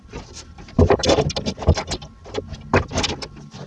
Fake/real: real